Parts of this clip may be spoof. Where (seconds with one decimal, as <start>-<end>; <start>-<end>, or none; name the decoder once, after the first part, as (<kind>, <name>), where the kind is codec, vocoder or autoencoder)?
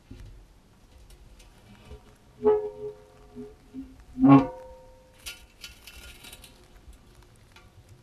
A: 3.9-4.5 (vocoder, BigVGAN v2)